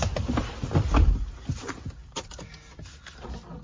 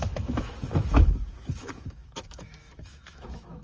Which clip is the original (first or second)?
first